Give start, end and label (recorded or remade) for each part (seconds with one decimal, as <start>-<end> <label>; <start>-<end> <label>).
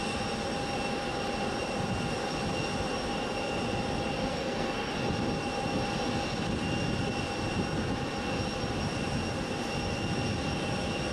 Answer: 0.0-4.3 recorded; 4.3-4.9 remade; 4.9-11.1 recorded